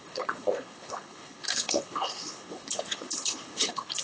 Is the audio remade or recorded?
remade